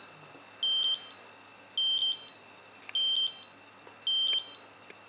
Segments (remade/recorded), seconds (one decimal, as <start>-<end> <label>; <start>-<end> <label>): 0.0-5.1 recorded